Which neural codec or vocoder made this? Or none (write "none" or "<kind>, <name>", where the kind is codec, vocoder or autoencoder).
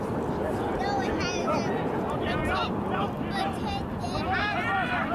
none